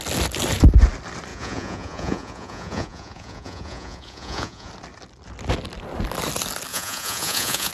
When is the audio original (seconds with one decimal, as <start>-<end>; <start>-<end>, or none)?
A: 0.0-1.3; 4.7-6.7

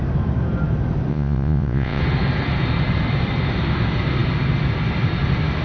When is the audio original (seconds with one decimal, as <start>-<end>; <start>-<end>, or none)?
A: 0.0-1.1; 2.0-5.6

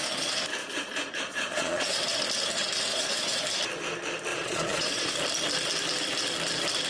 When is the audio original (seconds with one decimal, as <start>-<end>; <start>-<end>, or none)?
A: 0.0-0.6; 2.0-2.9; 3.4-4.3; 5.1-6.9

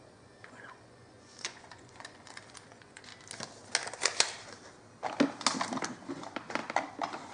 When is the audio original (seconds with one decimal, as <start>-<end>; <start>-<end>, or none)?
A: 3.1-6.1; 6.6-7.3